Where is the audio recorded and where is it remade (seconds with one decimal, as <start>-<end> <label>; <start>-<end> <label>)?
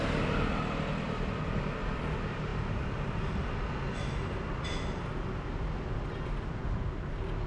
0.0-7.5 recorded